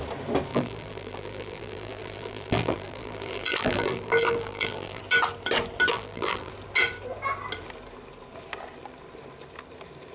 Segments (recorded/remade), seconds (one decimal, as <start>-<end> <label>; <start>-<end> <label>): 0.0-0.5 recorded; 0.5-5.0 remade; 5.0-5.9 recorded; 5.9-6.5 remade; 6.5-10.1 recorded